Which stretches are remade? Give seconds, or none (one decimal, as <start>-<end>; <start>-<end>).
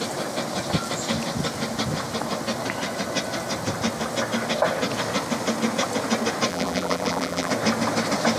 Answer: 6.5-7.5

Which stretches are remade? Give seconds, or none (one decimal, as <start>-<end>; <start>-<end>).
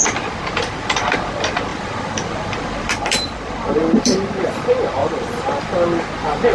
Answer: 1.7-3.7; 5.0-5.6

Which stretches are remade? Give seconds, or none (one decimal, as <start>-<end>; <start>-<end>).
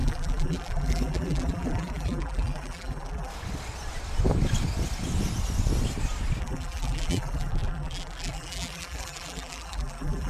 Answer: 0.0-3.3; 6.4-10.3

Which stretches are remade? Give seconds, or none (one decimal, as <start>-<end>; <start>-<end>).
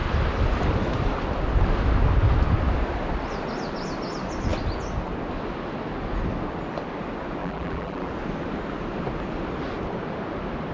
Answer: 7.4-8.1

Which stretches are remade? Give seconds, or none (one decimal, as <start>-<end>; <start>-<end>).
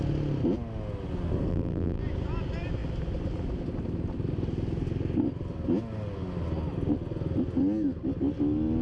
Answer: 1.5-2.0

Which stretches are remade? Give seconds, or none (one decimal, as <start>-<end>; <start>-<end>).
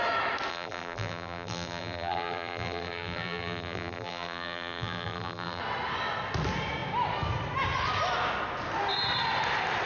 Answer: 0.5-5.6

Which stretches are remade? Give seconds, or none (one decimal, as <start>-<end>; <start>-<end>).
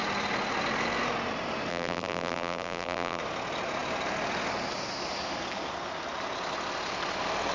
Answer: 1.7-3.2